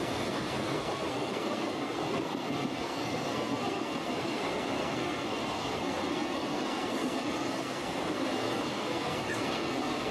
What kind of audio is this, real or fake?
fake